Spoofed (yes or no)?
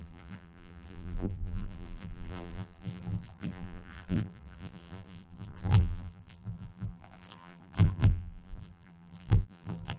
yes